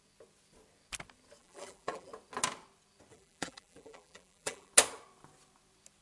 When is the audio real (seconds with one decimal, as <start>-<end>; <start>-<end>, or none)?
0.0-1.4; 2.1-3.1; 4.7-6.0